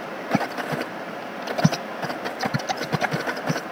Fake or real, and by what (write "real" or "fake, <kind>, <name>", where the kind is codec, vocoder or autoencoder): real